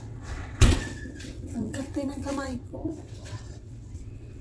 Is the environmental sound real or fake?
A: fake